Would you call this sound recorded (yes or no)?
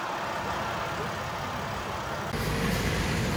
yes